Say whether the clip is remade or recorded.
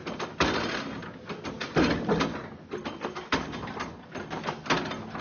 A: recorded